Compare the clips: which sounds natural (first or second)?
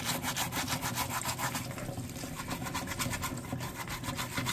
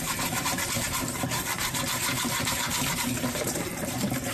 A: first